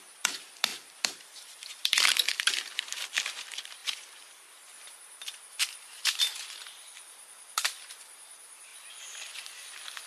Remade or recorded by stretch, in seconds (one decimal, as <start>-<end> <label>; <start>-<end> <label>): 0.0-8.7 remade; 8.7-10.1 recorded